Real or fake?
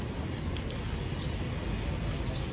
real